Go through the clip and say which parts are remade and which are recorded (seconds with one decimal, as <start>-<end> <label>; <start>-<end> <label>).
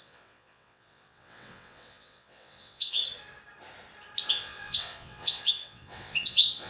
0.0-3.0 remade; 3.0-4.3 recorded; 4.3-6.7 remade